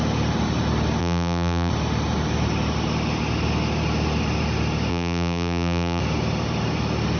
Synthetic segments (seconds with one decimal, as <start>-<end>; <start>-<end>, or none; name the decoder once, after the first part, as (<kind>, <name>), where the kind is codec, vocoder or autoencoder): 1.0-1.7 (vocoder, BigVGAN v2); 4.9-6.0